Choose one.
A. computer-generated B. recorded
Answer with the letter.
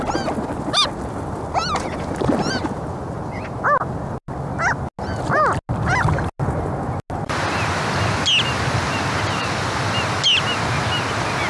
B